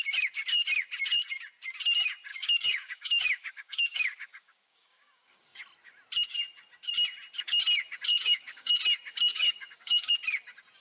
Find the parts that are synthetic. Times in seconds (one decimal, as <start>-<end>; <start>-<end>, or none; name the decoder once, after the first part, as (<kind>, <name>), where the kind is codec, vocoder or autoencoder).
2.3-5.6 (codec, DAC); 8.1-8.7; 9.3-10.1